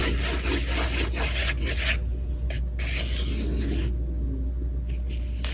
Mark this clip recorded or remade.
recorded